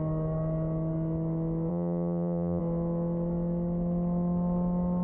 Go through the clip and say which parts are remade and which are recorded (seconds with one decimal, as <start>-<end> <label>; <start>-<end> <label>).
0.0-1.7 recorded; 1.7-2.6 remade; 2.6-5.0 recorded